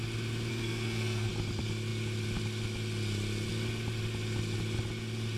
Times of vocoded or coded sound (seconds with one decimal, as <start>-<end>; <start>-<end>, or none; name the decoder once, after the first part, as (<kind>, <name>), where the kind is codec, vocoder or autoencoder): 0.5-1.3 (codec, SNAC)